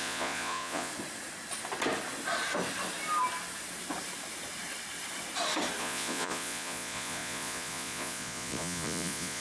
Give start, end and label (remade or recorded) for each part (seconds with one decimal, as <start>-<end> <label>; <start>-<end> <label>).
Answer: 0.0-0.9 remade; 0.9-5.8 recorded; 5.8-9.4 remade